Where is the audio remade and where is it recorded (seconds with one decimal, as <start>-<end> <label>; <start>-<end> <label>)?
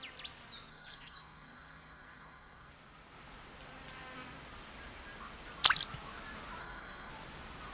0.0-0.7 recorded; 0.7-2.7 remade; 2.7-6.6 recorded; 6.6-7.1 remade; 7.1-7.7 recorded